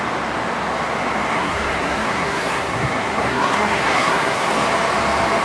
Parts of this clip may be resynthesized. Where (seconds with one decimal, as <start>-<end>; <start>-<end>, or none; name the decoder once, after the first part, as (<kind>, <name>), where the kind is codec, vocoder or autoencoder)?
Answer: 1.3-4.5 (codec, SNAC)